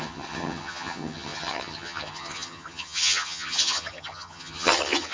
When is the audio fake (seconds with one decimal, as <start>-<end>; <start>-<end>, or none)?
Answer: 0.0-5.1